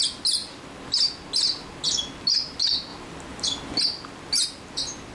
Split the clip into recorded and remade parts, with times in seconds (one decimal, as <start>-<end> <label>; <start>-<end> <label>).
0.0-5.1 recorded